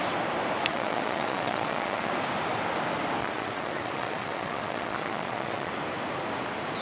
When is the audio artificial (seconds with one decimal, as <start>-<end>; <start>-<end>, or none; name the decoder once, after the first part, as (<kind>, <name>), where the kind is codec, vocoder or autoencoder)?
0.7-2.1 (vocoder, Vocos); 3.2-5.7